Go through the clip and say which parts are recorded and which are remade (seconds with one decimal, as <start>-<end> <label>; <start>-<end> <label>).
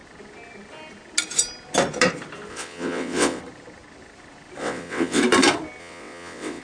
0.0-2.5 recorded; 2.5-3.4 remade; 3.4-4.6 recorded; 4.6-5.2 remade; 5.2-5.8 recorded; 5.8-6.6 remade